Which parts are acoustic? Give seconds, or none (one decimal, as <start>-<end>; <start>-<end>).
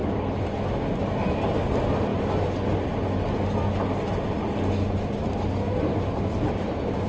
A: 0.0-7.1